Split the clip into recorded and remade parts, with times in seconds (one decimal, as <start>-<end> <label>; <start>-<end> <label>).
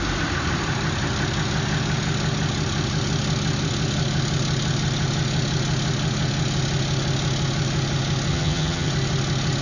0.0-8.3 recorded; 8.3-8.9 remade; 8.9-9.6 recorded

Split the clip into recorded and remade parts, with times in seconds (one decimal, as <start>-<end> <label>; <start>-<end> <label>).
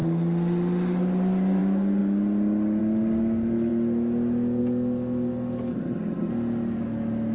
0.0-5.7 recorded; 5.7-6.3 remade; 6.3-7.3 recorded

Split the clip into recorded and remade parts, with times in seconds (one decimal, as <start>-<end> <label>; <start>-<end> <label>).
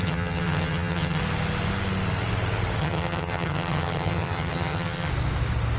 0.0-1.2 remade; 1.2-2.8 recorded; 2.8-5.1 remade; 5.1-5.8 recorded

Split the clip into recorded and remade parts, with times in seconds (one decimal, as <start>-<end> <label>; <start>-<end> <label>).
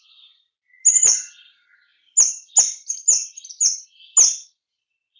0.0-5.2 recorded